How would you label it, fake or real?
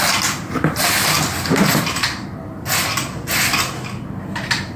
real